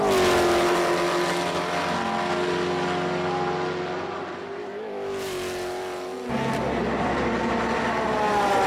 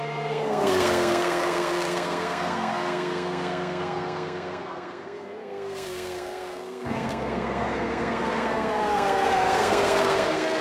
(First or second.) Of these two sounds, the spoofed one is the second